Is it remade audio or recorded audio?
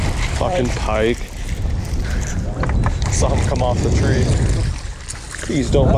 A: remade